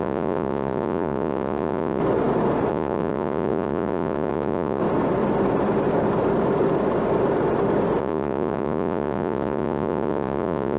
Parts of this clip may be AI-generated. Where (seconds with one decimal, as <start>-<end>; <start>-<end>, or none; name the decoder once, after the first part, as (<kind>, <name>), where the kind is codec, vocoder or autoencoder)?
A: 0.0-2.0 (vocoder, Vocos); 2.7-4.8; 8.0-10.8